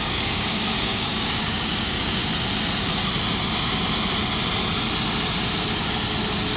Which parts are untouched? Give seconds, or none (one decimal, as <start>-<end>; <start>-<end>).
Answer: 2.2-6.6